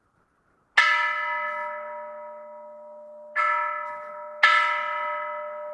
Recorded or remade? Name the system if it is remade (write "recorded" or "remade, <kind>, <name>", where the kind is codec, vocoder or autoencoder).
recorded